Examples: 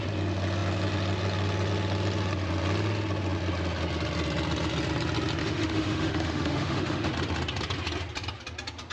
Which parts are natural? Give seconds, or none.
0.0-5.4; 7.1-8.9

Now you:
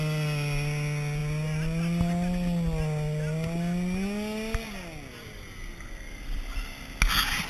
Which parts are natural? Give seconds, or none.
0.0-7.5